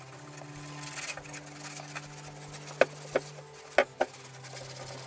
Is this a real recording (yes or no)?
yes